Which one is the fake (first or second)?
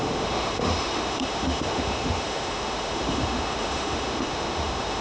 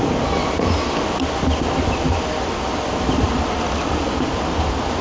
first